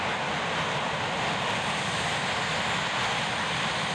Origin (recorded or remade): recorded